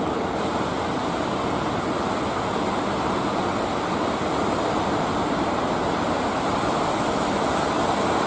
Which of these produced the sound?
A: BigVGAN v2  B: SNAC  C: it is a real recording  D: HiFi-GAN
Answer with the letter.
C